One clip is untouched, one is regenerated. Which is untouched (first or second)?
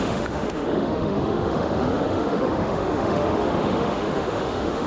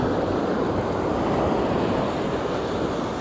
second